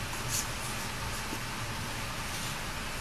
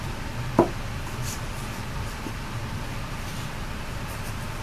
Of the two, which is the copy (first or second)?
second